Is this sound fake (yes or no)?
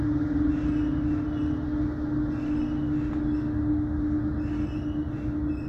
no